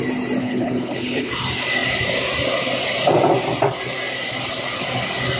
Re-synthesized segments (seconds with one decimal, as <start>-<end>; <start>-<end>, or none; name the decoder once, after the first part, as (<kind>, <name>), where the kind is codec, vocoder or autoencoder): 0.4-1.3 (codec, HILCodec)